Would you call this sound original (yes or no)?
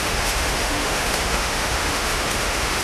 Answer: no